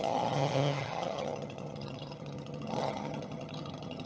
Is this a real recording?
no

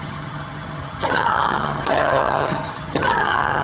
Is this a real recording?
no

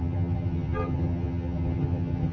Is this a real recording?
no